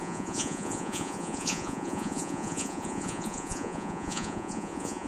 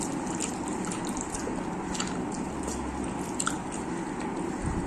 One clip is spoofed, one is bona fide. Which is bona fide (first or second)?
second